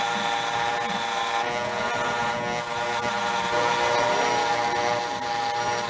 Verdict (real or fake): real